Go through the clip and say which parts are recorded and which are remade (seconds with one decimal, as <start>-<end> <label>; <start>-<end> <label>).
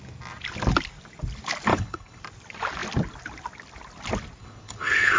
0.0-1.7 recorded; 1.7-2.2 remade; 2.2-4.4 recorded; 4.4-5.2 remade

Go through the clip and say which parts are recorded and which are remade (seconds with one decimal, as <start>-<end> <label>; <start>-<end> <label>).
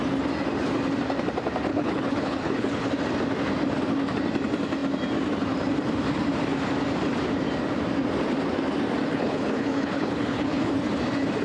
0.0-1.7 recorded; 1.7-2.9 remade; 2.9-9.1 recorded; 9.1-10.7 remade; 10.7-11.4 recorded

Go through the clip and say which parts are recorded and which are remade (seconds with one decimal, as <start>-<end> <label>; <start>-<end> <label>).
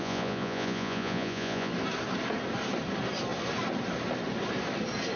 0.0-1.7 remade; 1.7-5.2 recorded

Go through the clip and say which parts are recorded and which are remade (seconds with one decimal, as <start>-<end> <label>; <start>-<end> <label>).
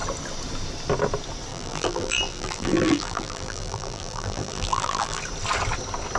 0.0-1.5 recorded; 1.5-5.2 remade; 5.2-6.2 recorded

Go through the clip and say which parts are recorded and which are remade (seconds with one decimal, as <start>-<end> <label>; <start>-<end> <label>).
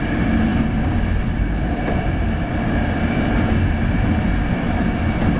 0.0-5.4 recorded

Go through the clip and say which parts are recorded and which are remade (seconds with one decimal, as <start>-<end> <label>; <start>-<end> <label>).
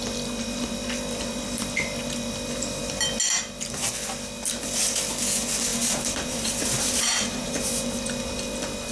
0.0-5.7 recorded; 5.7-7.5 remade; 7.5-8.9 recorded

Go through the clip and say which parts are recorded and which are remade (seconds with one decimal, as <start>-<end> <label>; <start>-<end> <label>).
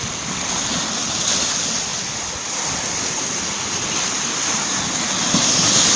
0.0-1.9 recorded; 1.9-4.4 remade; 4.4-6.0 recorded